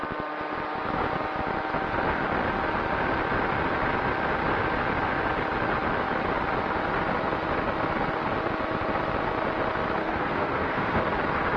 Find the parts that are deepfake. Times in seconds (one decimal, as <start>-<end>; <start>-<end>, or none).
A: 10.0-11.0